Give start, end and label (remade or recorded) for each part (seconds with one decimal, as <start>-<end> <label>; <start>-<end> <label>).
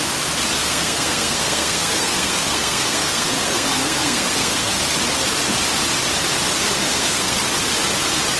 0.0-0.6 recorded; 0.6-4.7 remade; 4.7-6.9 recorded; 6.9-7.4 remade; 7.4-8.4 recorded